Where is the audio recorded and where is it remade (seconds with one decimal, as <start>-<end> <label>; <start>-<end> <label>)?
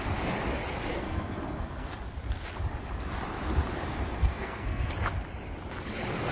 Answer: 0.0-0.9 recorded; 0.9-1.9 remade; 1.9-4.2 recorded; 4.2-4.9 remade; 4.9-6.3 recorded